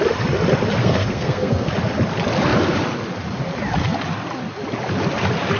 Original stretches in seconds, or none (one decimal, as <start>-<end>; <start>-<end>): 0.0-0.8; 1.7-5.6